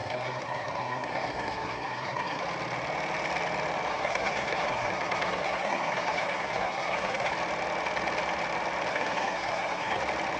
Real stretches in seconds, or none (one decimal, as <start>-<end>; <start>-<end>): 2.4-3.9; 7.3-8.9; 10.0-10.4

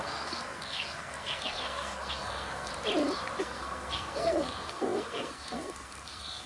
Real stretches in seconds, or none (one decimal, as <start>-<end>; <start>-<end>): 2.7-3.4

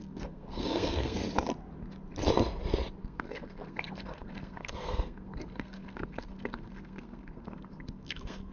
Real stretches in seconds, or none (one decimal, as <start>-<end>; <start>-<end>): 1.2-3.0

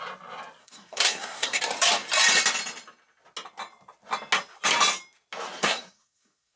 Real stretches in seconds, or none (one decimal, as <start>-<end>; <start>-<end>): 0.0-0.6; 1.6-5.6

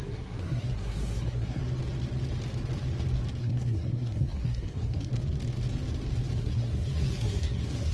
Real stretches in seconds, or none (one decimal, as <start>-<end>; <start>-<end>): 1.6-3.4; 5.1-6.4

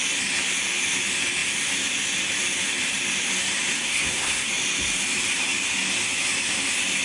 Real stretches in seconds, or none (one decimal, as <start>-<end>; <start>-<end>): 0.0-3.7; 4.5-7.0

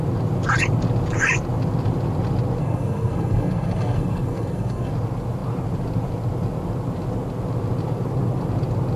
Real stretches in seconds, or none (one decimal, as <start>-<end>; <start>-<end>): 0.0-2.6; 4.9-9.0

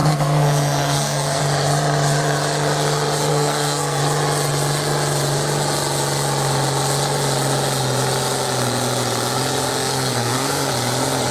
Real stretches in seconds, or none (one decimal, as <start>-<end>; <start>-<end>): 1.4-3.3; 4.0-9.7; 10.7-11.3